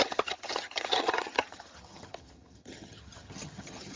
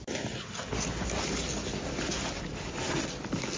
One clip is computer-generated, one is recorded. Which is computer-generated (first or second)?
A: first